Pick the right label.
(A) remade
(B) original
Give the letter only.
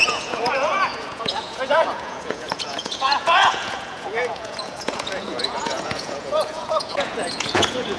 A